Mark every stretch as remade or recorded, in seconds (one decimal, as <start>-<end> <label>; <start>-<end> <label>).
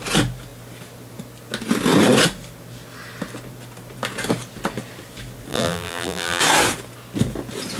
0.0-5.5 recorded; 5.5-6.4 remade; 6.4-7.8 recorded